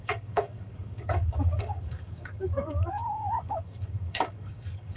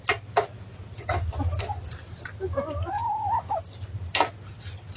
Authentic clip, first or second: second